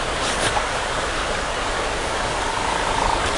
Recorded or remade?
remade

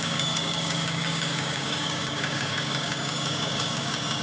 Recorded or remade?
remade